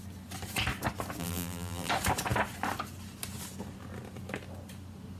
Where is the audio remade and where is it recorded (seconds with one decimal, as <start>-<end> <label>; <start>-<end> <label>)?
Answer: 0.0-1.2 recorded; 1.2-1.9 remade; 1.9-5.2 recorded